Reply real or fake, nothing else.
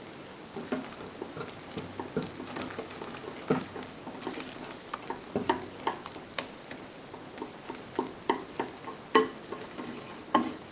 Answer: real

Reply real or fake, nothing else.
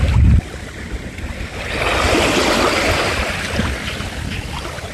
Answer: real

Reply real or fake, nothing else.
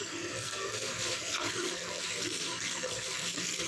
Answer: fake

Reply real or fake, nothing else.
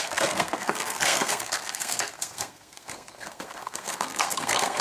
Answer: fake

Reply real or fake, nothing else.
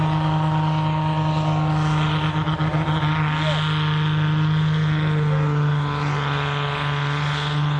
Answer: real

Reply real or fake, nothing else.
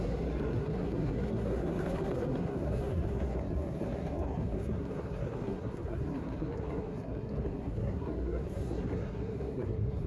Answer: fake